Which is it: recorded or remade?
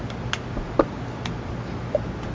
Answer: recorded